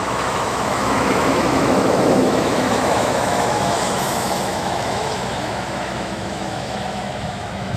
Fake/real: fake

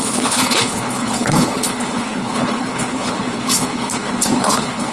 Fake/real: fake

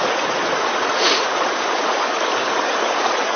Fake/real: fake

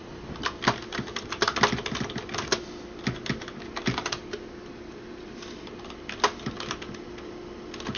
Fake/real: real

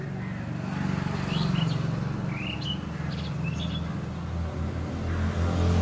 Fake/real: real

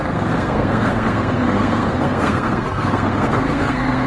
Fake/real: fake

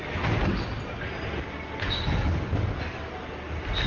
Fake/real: real